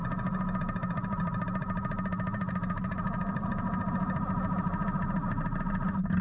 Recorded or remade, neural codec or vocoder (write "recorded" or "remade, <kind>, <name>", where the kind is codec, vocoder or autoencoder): recorded